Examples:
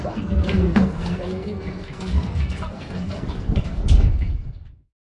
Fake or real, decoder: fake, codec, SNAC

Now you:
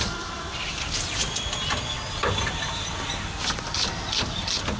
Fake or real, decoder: real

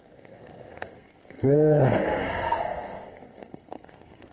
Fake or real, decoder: fake, codec, SNAC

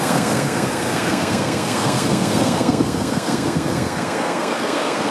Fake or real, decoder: fake, codec, SNAC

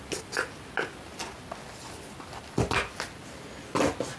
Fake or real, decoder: real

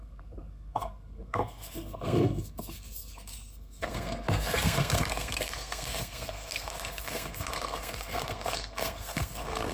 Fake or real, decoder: fake, codec, SNAC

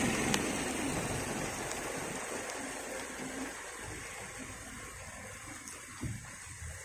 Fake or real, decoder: real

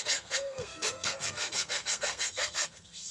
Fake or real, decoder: fake, codec, SNAC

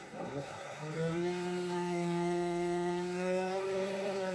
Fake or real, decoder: fake, codec, SNAC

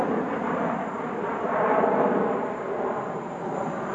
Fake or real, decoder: real